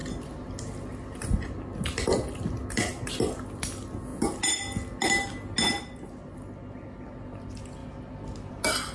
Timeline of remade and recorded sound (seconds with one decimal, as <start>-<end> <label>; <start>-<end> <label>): 0.0-8.9 recorded